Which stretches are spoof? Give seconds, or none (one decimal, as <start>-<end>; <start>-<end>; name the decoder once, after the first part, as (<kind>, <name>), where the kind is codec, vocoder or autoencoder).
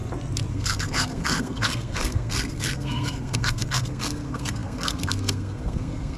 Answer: 0.5-6.2 (codec, SNAC)